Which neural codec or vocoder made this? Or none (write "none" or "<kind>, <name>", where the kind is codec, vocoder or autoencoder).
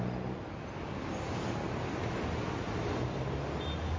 none